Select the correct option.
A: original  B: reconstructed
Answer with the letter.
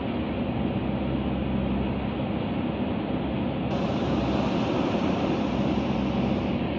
A